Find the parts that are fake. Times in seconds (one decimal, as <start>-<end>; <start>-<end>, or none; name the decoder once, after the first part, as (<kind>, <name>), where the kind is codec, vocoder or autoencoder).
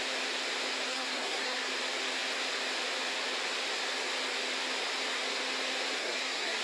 0.9-1.7 (codec, SNAC); 6.0-6.6